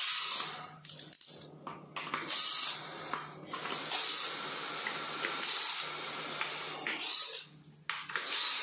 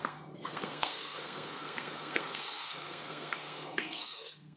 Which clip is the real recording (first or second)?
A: first